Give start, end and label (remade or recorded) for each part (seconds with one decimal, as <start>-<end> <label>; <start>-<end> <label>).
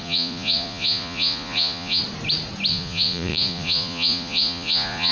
0.0-2.0 remade; 2.0-2.7 recorded; 2.7-5.1 remade